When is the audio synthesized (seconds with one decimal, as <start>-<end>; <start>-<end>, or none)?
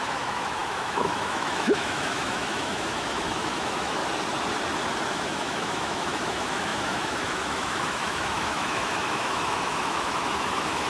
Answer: 0.0-4.0; 5.1-10.9